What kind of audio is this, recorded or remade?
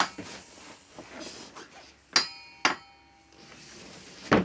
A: recorded